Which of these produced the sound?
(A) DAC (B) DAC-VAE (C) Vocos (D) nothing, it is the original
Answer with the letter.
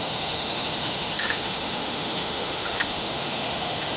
B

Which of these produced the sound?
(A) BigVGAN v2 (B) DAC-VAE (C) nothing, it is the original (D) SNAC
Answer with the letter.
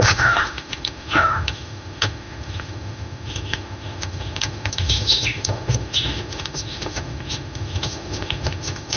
B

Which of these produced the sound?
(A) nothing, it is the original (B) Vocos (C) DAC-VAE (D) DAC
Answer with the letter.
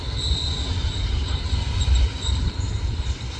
A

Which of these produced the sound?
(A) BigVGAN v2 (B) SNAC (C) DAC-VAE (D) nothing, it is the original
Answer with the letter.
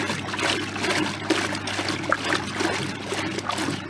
D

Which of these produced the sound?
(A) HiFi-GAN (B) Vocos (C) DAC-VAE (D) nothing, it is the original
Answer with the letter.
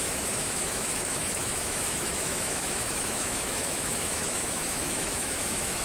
C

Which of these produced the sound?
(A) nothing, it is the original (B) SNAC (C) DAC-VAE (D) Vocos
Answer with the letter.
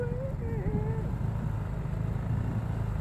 A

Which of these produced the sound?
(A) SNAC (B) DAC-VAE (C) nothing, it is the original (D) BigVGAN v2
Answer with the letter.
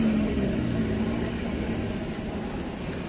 C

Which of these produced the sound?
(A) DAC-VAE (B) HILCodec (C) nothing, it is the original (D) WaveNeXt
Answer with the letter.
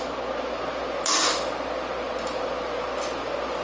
C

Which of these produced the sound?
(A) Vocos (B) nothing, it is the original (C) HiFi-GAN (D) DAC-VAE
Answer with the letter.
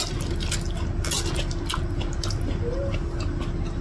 B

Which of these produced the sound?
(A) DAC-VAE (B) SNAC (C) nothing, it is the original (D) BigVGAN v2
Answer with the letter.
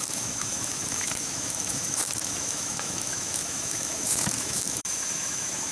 A